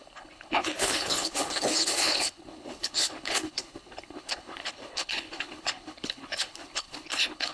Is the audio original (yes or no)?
no